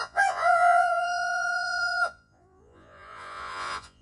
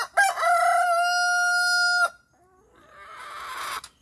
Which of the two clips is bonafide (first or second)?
second